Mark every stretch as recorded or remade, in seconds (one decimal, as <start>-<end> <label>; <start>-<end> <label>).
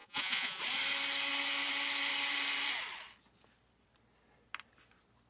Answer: 0.0-0.6 remade; 0.6-5.3 recorded